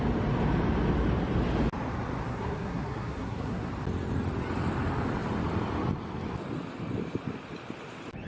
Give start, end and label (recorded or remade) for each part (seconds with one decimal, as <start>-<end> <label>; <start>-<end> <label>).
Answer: 0.0-2.3 recorded; 2.3-3.7 remade; 3.7-8.3 recorded